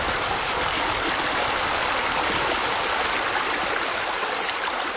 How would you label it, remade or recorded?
recorded